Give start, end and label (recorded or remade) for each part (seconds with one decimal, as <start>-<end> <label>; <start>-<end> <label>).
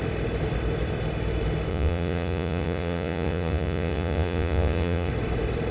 0.0-1.7 recorded; 1.7-5.1 remade; 5.1-5.7 recorded